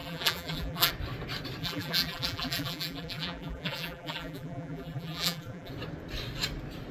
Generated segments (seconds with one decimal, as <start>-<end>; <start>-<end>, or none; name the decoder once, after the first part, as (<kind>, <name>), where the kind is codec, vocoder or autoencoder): 0.0-0.9 (vocoder, BigVGAN v2); 1.6-5.7